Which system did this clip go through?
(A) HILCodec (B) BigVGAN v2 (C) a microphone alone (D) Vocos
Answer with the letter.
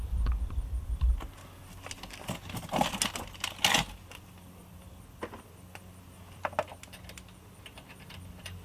C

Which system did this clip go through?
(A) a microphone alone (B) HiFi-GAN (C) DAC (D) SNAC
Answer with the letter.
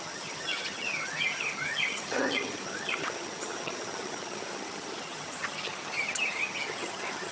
B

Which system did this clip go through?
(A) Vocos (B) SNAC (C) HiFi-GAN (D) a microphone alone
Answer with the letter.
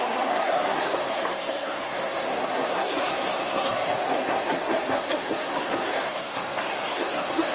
B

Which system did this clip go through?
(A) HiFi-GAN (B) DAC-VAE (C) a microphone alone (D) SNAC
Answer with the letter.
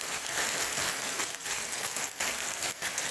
D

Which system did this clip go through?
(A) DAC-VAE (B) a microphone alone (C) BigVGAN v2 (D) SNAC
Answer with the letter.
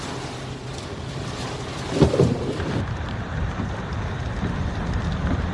C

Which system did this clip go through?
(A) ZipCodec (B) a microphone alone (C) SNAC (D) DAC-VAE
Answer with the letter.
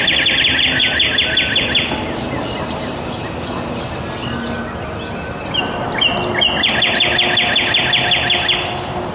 B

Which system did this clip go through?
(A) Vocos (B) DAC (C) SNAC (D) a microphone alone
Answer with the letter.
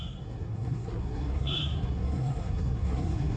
C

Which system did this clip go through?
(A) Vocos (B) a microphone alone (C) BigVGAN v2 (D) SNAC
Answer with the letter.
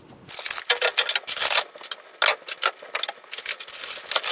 B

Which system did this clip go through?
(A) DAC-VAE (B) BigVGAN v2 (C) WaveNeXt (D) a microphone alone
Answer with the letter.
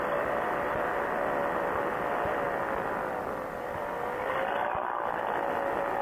D